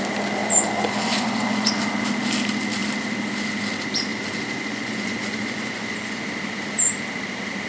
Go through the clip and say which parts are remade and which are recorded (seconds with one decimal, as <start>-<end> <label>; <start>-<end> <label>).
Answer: 0.0-0.4 recorded; 0.4-1.7 remade; 1.7-4.1 recorded; 4.1-6.2 remade; 6.2-7.7 recorded